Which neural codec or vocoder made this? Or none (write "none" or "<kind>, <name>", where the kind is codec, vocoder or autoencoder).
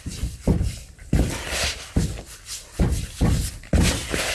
none